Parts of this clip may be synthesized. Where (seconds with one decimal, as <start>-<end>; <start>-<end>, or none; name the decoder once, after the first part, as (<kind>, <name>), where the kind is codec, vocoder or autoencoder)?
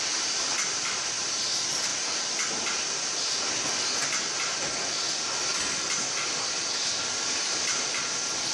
none